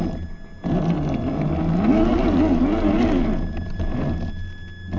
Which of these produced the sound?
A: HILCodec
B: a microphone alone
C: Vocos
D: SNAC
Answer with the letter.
B